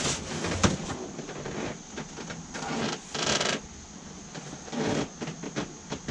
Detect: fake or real real